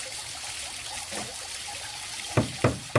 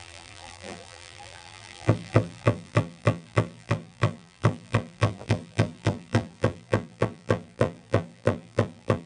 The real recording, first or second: first